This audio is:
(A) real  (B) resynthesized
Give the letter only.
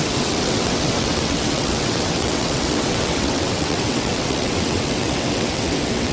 B